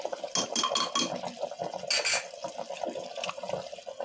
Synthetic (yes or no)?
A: no